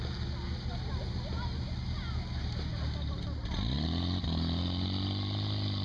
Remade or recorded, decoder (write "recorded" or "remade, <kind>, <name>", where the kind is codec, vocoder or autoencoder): recorded